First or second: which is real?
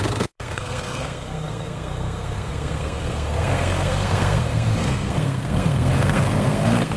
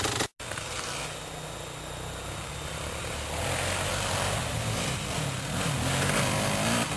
second